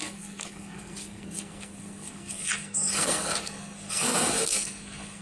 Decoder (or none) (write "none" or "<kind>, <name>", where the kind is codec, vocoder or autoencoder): codec, SNAC